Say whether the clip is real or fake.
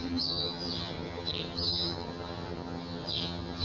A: fake